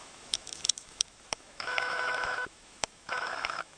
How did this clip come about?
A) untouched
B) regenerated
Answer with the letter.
B